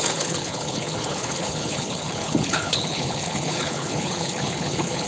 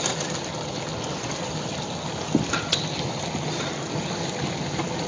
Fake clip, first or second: first